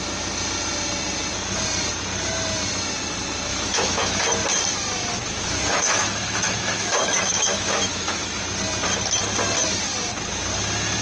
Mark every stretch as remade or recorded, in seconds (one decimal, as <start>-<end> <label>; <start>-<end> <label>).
0.0-3.5 recorded; 3.5-4.2 remade; 4.2-5.1 recorded; 5.1-8.4 remade; 8.4-11.0 recorded